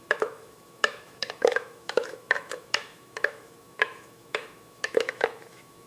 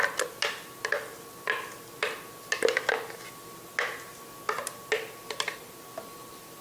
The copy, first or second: first